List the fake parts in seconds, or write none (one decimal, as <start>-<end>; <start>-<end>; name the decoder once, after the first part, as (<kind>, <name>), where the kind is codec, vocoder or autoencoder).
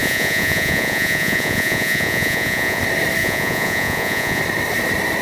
0.0-2.8 (vocoder, Vocos); 3.2-4.4